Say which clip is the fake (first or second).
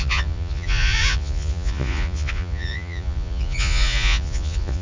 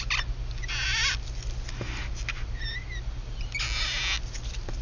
first